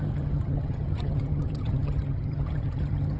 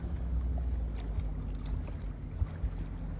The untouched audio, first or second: second